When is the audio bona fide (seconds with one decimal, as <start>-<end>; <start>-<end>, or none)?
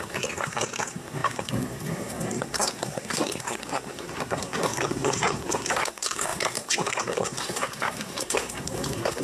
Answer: none